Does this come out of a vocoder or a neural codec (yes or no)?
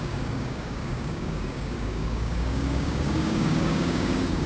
yes